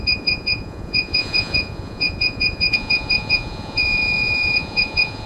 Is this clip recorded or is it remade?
remade